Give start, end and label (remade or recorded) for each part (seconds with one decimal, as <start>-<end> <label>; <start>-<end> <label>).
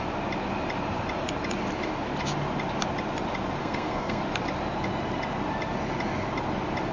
0.0-3.6 recorded; 3.6-4.2 remade; 4.2-6.9 recorded